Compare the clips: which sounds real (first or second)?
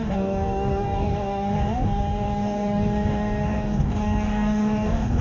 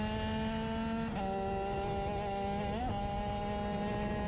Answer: second